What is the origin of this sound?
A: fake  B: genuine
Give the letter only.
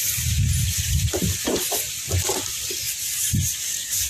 B